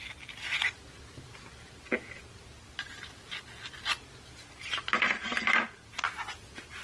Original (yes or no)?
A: yes